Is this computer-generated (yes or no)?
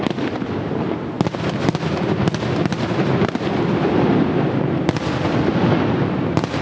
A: no